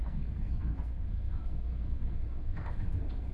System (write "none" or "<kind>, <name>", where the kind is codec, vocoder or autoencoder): codec, SNAC